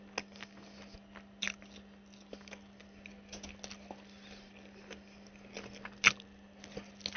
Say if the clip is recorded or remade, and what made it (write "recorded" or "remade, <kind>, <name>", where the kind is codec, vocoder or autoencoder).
recorded